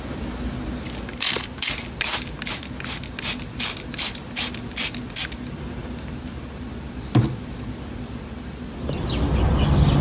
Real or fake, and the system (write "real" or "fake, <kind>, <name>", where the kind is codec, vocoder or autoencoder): real